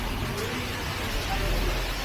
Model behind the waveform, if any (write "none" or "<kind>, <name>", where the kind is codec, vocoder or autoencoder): none